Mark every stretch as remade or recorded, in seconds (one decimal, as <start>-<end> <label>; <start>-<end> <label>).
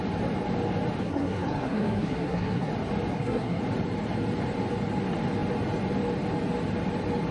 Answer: 0.0-1.0 recorded; 1.0-2.7 remade; 2.7-3.1 recorded; 3.1-3.6 remade; 3.6-7.3 recorded